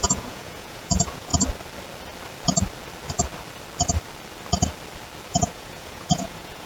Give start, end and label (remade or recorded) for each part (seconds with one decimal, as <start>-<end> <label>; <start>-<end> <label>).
0.0-1.3 remade; 1.3-5.3 recorded; 5.3-6.7 remade